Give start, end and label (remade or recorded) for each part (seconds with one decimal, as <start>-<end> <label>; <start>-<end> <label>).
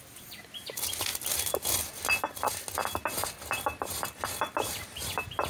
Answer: 0.0-5.5 recorded